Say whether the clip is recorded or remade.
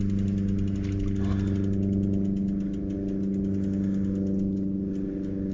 recorded